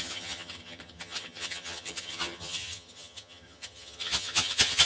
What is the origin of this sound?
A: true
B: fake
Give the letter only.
B